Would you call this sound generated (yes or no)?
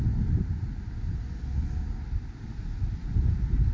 no